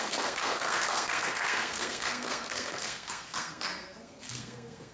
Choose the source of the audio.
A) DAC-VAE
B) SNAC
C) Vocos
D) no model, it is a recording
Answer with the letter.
B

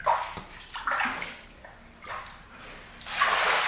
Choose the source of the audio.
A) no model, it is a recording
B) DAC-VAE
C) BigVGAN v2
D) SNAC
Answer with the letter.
A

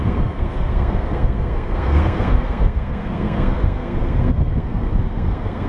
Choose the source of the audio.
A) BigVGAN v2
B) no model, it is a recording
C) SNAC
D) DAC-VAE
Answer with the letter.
C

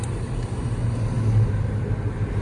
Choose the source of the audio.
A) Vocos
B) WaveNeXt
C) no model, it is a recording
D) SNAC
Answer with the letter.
C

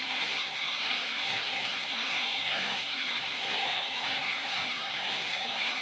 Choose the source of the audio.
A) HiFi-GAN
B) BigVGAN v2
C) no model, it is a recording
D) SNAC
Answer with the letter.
D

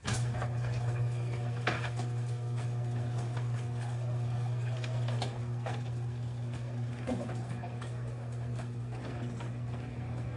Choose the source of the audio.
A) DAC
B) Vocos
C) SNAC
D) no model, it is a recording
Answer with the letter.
C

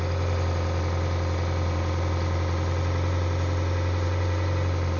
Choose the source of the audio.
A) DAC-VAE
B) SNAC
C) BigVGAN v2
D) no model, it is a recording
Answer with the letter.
D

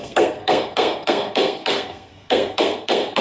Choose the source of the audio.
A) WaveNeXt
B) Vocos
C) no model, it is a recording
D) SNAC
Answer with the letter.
D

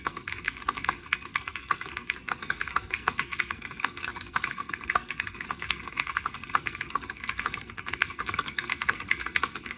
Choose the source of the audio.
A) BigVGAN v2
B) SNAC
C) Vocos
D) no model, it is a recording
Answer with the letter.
B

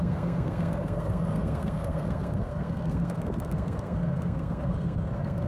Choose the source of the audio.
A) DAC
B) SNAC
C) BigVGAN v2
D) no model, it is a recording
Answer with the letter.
B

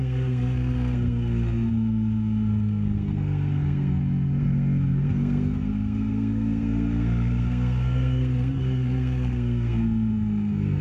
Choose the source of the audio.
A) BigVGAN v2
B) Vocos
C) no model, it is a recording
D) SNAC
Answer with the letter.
D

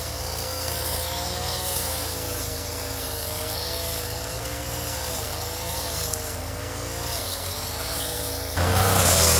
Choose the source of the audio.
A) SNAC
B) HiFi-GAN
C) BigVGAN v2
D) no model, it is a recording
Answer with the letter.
A